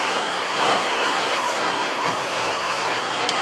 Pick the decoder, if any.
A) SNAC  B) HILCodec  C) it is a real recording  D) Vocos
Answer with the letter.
A